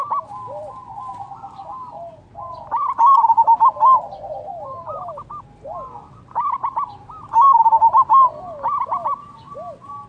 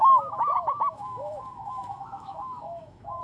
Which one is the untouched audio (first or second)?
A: first